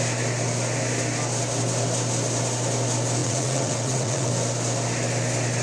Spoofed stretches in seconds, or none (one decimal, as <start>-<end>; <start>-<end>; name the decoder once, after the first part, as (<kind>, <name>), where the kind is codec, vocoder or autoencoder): 3.2-4.3 (vocoder, WaveNeXt)